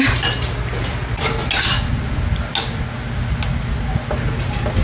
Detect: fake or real real